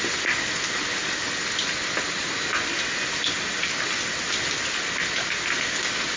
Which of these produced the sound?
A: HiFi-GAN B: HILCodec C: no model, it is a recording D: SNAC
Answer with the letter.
C